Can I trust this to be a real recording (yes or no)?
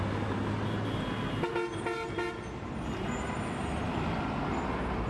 yes